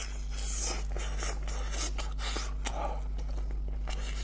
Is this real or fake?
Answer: real